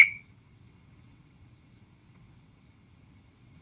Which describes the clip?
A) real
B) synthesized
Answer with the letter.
B